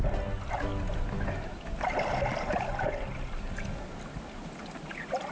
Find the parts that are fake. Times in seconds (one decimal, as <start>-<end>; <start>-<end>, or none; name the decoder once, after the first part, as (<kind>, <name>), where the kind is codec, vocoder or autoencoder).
none

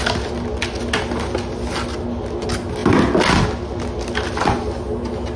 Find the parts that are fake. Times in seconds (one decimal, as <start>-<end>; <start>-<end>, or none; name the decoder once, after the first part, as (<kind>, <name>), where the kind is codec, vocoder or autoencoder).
none

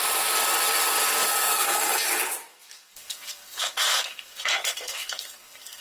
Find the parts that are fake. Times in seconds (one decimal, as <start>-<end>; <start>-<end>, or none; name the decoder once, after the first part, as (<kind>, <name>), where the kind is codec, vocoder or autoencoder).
1.5-2.1 (codec, SNAC); 2.5-5.8

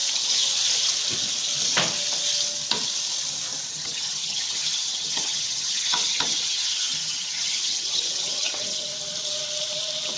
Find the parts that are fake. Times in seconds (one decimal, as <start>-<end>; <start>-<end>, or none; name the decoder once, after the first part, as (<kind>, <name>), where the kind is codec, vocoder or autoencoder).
3.7-8.9 (vocoder, HiFi-GAN)